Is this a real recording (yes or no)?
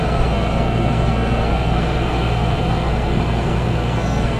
no